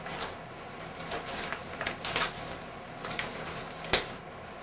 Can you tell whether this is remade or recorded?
recorded